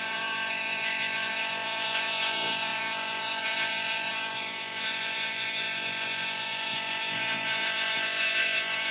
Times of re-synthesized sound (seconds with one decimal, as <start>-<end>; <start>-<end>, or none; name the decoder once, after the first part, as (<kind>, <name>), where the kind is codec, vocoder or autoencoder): 0.0-8.9 (vocoder, Vocos)